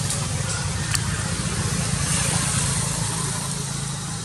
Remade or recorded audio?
recorded